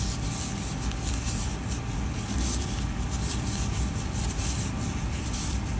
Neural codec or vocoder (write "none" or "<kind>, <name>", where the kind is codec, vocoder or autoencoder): none